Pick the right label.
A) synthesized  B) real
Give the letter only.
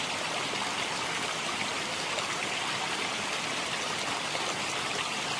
B